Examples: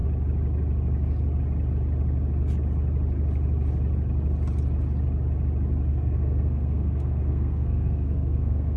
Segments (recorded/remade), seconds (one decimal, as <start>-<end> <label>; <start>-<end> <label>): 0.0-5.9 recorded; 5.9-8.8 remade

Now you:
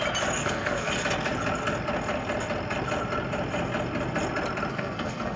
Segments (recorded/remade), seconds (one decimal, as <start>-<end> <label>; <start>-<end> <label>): 0.0-0.4 recorded; 0.4-0.9 remade; 0.9-4.7 recorded; 4.7-5.4 remade

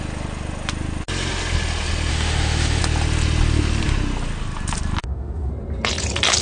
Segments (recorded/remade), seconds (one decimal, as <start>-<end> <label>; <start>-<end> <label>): 0.0-2.1 recorded; 2.1-2.8 remade; 2.8-5.0 recorded; 5.0-5.5 remade; 5.5-6.4 recorded

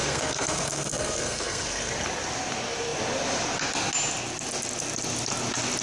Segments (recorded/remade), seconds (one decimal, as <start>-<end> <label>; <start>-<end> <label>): 0.0-1.9 remade; 1.9-5.8 recorded

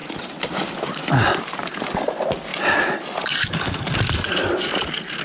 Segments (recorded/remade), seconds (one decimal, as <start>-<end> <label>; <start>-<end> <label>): 0.0-5.2 recorded